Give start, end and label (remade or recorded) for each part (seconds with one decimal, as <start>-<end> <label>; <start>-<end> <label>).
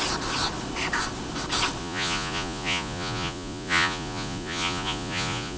0.0-1.8 recorded; 1.8-5.6 remade